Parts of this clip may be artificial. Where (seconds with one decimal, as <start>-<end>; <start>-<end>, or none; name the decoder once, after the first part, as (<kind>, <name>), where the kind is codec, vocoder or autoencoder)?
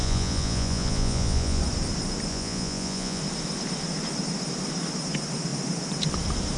0.0-1.6 (vocoder, Vocos); 2.3-3.2